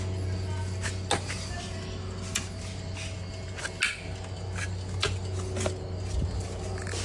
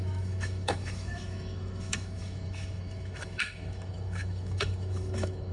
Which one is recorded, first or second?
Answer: first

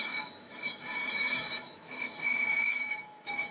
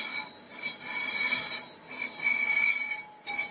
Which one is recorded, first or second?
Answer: second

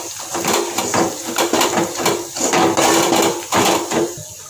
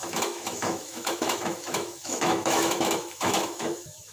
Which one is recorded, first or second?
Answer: first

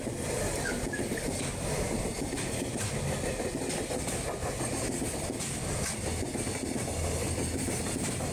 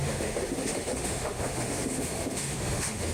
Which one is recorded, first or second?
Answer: first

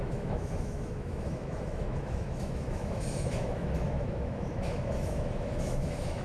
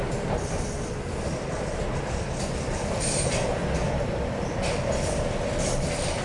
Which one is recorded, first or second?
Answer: second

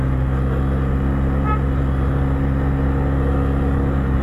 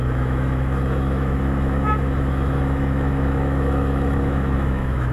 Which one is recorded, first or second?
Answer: first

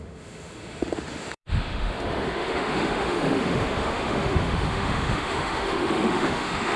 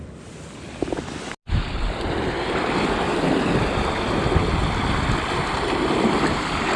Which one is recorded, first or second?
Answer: second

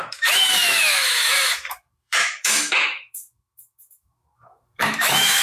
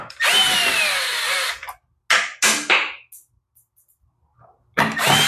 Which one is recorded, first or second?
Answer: second